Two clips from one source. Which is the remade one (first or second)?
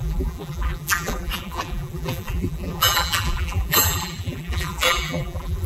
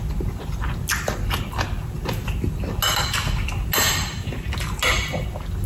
first